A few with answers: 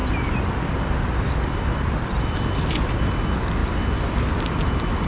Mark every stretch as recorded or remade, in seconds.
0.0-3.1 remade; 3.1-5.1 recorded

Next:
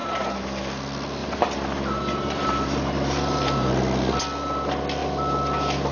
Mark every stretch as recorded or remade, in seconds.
0.0-0.6 remade; 0.6-1.2 recorded; 1.2-3.7 remade; 3.7-5.9 recorded

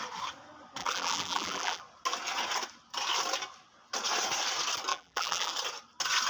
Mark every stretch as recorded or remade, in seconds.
0.0-0.8 recorded; 0.8-1.8 remade; 1.8-4.9 recorded; 4.9-5.5 remade; 5.5-6.3 recorded

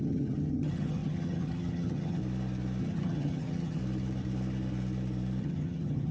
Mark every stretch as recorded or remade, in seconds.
0.0-2.2 remade; 2.2-2.8 recorded; 2.8-3.8 remade; 3.8-5.4 recorded; 5.4-6.1 remade

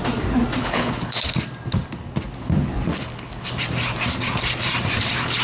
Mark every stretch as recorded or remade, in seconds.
0.0-0.6 recorded; 0.6-1.3 remade; 1.3-2.9 recorded; 2.9-3.5 remade; 3.5-5.4 recorded

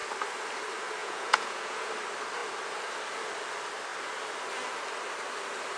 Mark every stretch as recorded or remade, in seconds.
0.0-1.0 recorded; 1.0-1.9 remade; 1.9-5.8 recorded

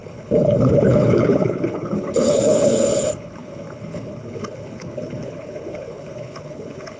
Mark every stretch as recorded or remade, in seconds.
0.0-7.0 remade

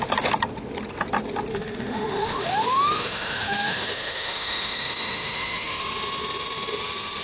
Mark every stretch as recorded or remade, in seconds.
0.0-1.5 recorded; 1.5-5.8 remade; 5.8-7.2 recorded